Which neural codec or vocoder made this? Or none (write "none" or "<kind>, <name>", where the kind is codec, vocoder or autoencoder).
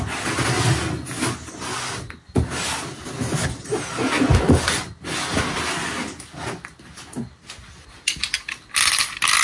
none